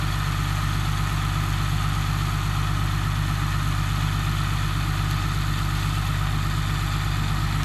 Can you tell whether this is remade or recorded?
recorded